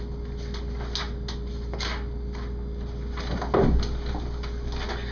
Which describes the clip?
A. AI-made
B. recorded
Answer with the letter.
B